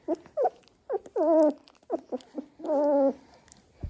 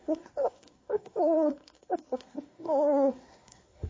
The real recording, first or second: first